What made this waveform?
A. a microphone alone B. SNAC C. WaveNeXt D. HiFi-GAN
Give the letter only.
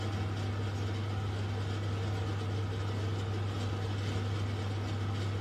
A